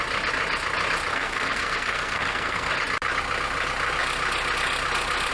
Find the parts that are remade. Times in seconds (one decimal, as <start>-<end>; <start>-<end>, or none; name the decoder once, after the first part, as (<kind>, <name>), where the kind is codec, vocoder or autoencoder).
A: 1.1-2.7 (codec, SNAC)